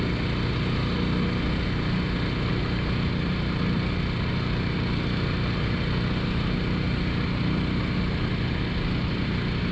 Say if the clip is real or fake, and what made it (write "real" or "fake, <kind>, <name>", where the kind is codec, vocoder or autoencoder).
real